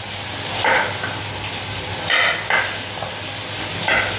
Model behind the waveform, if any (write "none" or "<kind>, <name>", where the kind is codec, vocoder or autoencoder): none